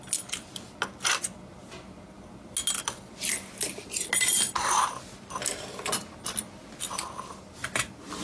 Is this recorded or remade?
recorded